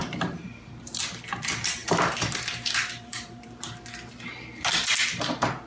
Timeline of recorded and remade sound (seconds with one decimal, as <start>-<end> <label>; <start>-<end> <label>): 0.0-0.7 remade; 0.7-1.8 recorded; 1.8-3.7 remade; 3.7-5.7 recorded

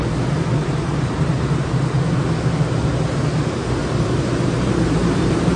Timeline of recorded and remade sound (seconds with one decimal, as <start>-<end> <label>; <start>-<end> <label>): 0.0-0.6 recorded; 0.6-2.2 remade; 2.2-3.8 recorded; 3.8-5.6 remade

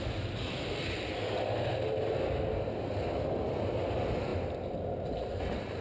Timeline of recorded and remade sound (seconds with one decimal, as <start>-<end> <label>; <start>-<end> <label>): 0.0-5.8 recorded

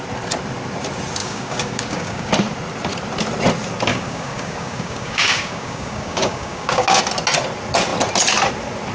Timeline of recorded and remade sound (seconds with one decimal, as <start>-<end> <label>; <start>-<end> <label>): 0.0-1.2 recorded; 1.2-2.3 remade; 2.3-3.9 recorded; 3.9-7.0 remade; 7.0-8.9 recorded

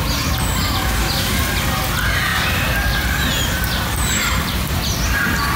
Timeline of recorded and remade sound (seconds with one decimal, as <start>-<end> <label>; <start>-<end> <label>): 0.0-2.3 recorded; 2.3-4.8 remade; 4.8-5.6 recorded

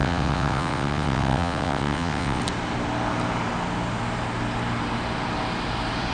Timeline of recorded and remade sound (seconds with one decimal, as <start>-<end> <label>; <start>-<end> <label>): 0.0-2.4 remade; 2.4-6.1 recorded

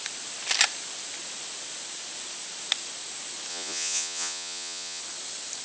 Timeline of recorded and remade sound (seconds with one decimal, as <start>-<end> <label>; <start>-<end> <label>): 0.0-3.5 recorded; 3.5-5.0 remade; 5.0-5.6 recorded

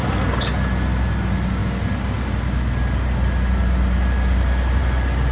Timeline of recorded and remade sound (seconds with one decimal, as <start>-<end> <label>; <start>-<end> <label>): 0.0-5.3 recorded